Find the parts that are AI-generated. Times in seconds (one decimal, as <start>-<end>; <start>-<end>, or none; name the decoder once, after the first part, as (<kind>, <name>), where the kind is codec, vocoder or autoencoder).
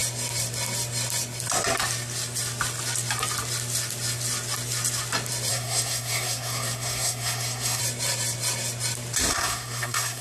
5.5-7.8 (codec, SNAC); 9.3-10.2